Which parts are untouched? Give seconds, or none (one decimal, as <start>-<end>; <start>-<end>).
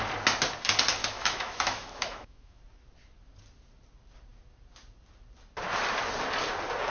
0.0-1.0; 2.6-6.9